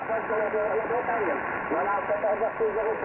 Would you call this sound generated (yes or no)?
no